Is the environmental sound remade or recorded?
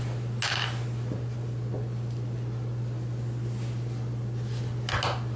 recorded